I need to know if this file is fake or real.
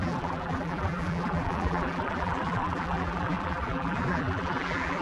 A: fake